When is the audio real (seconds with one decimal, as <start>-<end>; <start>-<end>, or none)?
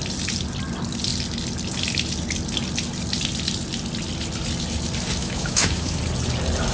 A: 0.0-5.2; 6.0-6.7